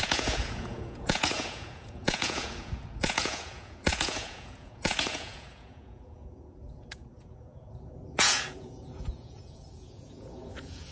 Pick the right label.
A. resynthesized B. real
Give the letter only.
A